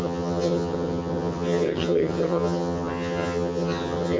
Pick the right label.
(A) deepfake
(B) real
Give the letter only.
A